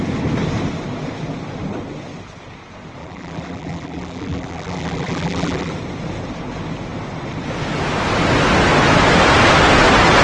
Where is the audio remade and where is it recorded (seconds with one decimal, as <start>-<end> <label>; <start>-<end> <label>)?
0.0-3.0 recorded; 3.0-5.7 remade; 5.7-10.2 recorded